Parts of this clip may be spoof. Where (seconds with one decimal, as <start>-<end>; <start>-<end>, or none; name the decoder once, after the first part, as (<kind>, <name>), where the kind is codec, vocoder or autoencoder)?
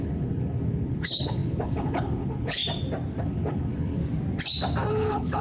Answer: 0.0-2.6 (codec, HILCodec); 3.2-4.0; 4.9-5.4